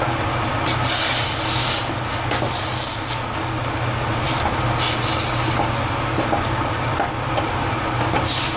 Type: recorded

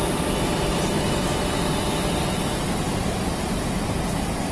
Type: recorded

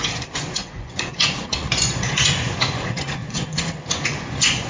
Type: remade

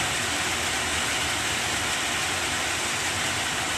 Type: recorded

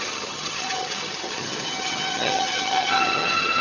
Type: remade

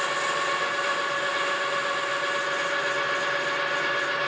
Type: recorded